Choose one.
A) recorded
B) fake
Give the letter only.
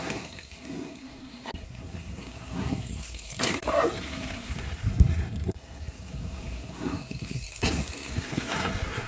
B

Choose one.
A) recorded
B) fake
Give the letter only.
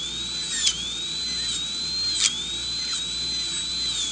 A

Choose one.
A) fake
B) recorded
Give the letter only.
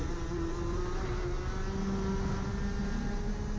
B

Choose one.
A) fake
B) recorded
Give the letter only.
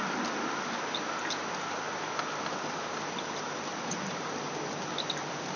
B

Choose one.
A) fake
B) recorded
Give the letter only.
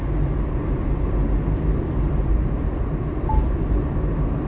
B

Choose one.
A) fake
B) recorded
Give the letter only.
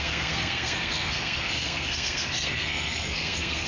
A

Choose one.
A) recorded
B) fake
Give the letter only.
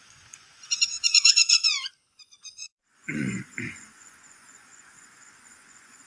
B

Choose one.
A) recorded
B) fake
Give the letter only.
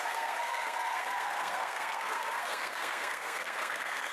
B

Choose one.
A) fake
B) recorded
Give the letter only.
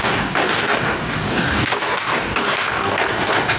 A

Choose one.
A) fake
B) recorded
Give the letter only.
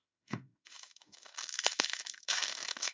A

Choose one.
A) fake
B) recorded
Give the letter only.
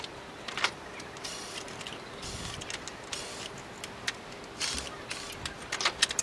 B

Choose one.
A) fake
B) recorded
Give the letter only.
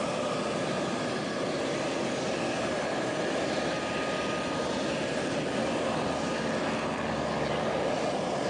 B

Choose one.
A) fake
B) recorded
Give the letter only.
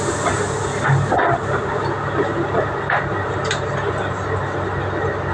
B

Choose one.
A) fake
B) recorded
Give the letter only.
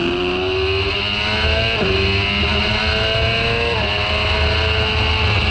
B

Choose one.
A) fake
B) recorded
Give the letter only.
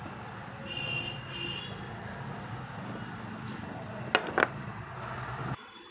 B